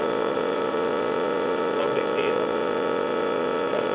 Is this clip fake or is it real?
fake